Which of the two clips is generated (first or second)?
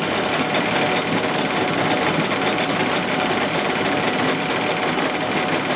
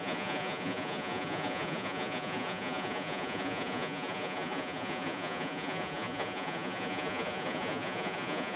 second